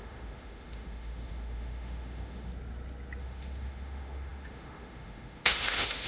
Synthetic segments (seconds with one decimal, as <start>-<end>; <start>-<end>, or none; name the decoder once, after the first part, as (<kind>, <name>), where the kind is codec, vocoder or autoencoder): 0.0-2.5 (autoencoder, DAC-VAE); 3.2-6.1